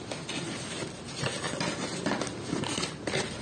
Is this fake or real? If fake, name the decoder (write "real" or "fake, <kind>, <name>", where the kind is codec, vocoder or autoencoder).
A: real